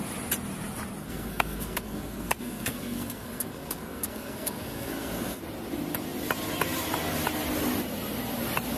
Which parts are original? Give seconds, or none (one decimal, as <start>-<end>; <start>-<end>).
0.0-1.0; 5.4-8.8